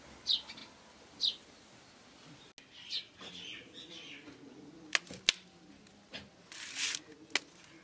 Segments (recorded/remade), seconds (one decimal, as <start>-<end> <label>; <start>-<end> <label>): 0.0-7.8 recorded